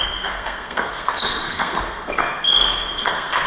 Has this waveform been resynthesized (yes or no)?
yes